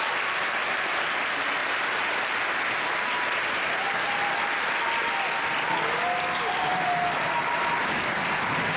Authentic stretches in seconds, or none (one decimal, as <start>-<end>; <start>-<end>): 0.0-8.8